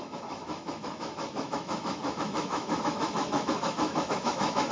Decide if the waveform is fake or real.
fake